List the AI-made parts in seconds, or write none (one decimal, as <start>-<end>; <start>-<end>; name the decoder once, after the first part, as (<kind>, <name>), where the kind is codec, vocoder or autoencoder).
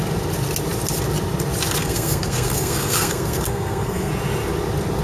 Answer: 1.8-4.1 (codec, SNAC)